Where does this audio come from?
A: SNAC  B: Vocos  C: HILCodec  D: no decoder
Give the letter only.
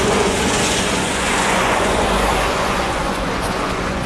B